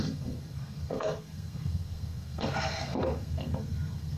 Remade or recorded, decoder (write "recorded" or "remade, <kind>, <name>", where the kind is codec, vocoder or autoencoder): remade, codec, SNAC